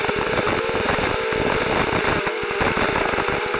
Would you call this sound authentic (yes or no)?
yes